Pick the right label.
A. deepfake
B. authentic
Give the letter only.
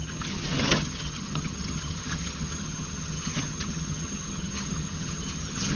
A